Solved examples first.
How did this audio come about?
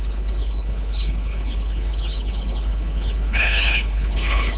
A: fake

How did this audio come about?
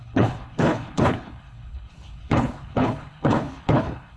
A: fake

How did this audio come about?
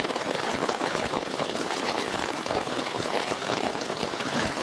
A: fake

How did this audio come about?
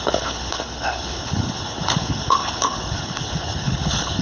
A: fake